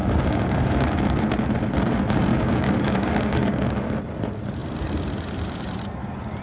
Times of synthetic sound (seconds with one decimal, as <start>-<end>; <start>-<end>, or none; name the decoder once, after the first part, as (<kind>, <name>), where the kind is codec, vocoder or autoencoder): 0.0-1.2 (codec, DAC); 2.3-4.0